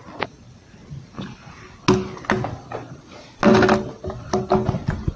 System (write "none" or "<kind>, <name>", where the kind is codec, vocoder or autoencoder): none